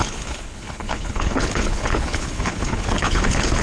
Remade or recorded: remade